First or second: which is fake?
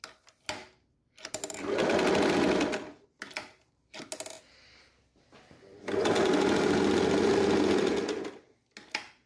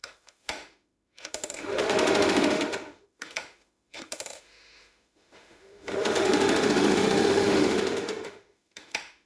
second